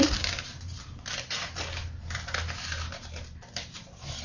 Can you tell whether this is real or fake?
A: real